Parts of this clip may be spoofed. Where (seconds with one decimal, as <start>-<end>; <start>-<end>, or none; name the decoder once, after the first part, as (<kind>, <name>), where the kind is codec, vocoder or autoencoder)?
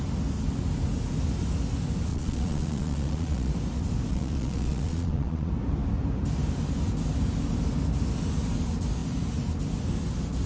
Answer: 2.1-3.5 (vocoder, Vocos); 4.1-5.5